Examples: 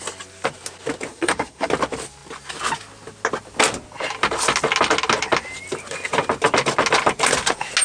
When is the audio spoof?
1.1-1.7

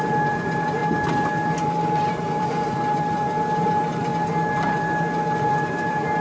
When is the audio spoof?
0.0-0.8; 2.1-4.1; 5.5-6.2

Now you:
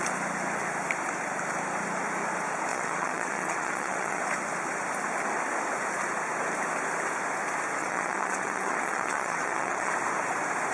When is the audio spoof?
2.7-4.2; 7.8-9.9

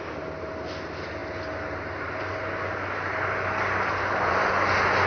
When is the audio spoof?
none